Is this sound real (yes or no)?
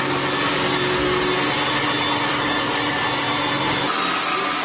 yes